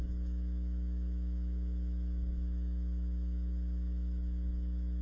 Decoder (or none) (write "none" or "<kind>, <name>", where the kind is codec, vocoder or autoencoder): autoencoder, DAC-VAE